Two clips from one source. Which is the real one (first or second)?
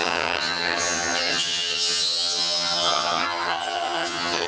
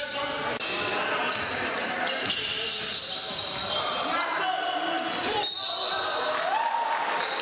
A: second